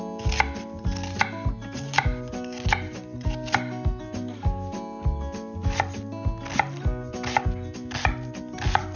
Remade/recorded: recorded